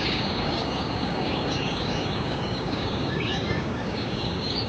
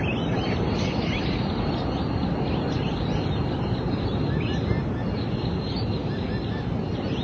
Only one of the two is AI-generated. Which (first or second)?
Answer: first